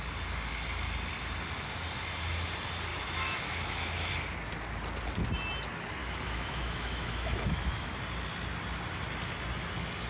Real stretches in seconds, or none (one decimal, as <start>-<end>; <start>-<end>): 0.0-2.9; 4.1-6.0; 8.0-10.1